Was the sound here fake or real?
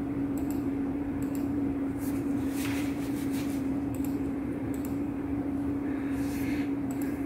fake